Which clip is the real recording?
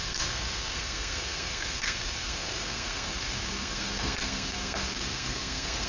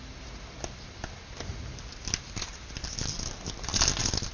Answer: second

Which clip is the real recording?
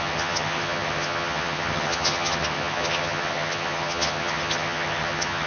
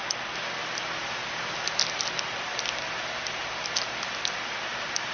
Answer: second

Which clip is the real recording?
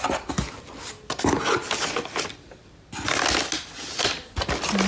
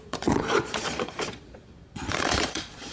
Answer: first